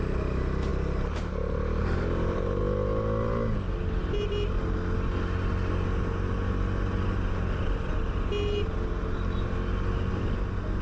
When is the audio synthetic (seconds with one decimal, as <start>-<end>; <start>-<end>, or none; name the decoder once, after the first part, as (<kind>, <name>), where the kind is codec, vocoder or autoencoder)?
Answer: 1.8-2.6 (vocoder, BigVGAN v2)